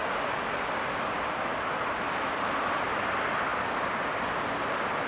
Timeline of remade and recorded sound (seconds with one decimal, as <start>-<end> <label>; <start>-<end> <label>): 0.0-5.1 recorded